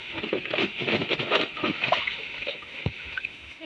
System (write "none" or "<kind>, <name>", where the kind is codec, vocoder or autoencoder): autoencoder, DAC-VAE